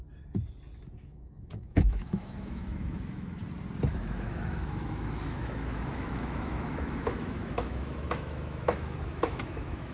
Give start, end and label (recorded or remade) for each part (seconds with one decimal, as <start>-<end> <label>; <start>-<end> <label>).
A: 0.0-1.0 recorded; 1.0-3.4 remade; 3.4-3.9 recorded; 3.9-9.9 remade